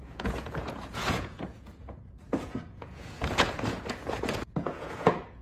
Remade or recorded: remade